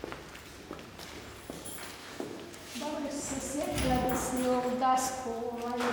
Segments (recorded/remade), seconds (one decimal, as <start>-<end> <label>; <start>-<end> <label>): 0.0-2.0 recorded; 2.0-3.2 remade; 3.2-5.9 recorded